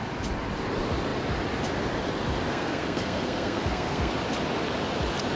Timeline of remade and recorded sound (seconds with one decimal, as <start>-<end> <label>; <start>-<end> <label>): 0.0-2.5 recorded; 2.5-4.1 remade; 4.1-5.4 recorded